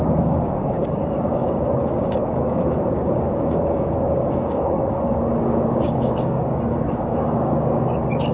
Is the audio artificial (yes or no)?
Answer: yes